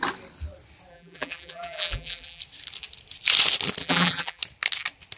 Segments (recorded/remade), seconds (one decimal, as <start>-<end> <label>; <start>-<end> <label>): 0.0-0.9 recorded; 0.9-2.4 remade; 2.4-3.8 recorded; 3.8-4.4 remade; 4.4-5.2 recorded